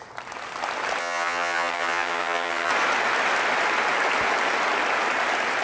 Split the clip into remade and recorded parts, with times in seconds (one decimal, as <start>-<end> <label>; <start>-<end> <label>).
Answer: 0.0-1.0 recorded; 1.0-2.7 remade; 2.7-5.6 recorded